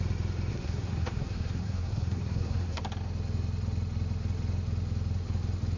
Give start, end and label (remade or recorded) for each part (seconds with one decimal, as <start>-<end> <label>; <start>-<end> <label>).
0.0-0.5 recorded; 0.5-2.8 remade; 2.8-5.8 recorded